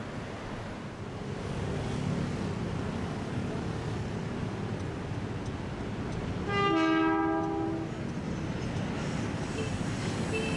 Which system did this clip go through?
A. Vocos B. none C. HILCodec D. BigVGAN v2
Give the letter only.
B